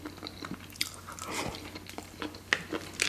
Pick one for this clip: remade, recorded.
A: recorded